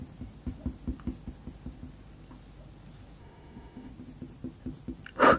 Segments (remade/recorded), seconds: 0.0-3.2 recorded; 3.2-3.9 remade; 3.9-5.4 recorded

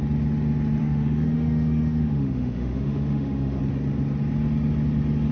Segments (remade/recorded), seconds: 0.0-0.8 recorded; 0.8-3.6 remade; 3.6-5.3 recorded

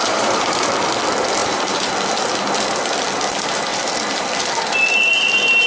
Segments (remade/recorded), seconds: 0.0-0.7 remade; 0.7-1.4 recorded; 1.4-1.9 remade; 1.9-5.7 recorded